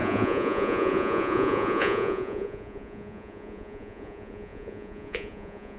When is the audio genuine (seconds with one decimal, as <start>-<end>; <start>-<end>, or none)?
none